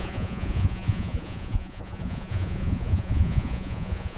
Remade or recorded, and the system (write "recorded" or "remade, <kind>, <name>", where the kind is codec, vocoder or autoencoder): remade, vocoder, Vocos